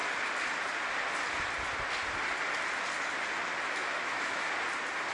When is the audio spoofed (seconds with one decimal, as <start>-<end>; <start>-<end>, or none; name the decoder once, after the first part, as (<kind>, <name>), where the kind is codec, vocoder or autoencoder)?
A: 3.8-4.5 (autoencoder, DAC-VAE)